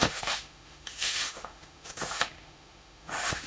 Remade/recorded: remade